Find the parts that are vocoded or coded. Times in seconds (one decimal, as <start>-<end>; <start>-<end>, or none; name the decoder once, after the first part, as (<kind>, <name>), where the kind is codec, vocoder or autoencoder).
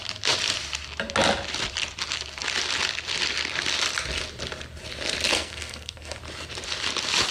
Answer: 5.3-6.2 (codec, SNAC)